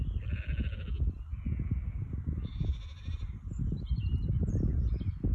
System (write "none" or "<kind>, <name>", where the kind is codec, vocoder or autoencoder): none